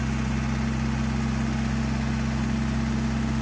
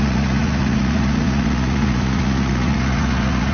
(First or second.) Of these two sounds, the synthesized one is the second